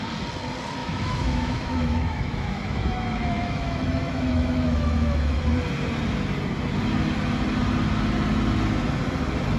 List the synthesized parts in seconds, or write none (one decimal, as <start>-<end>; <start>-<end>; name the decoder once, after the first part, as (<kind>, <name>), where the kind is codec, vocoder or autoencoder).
0.8-5.4 (autoencoder, DAC-VAE)